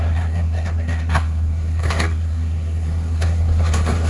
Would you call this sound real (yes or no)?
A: no